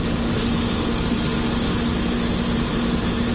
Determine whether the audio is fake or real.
real